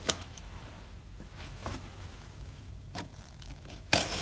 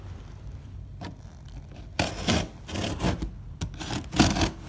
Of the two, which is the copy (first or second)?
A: first